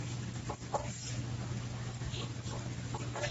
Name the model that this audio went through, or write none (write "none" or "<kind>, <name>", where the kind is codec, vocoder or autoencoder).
none